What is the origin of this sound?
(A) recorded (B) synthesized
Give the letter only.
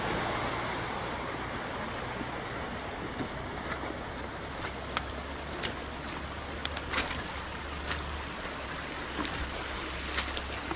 A